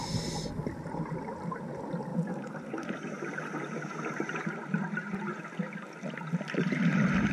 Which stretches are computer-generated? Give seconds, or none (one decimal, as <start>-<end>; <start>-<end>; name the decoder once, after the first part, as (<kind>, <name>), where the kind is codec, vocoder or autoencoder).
2.1-5.4 (vocoder, BigVGAN v2)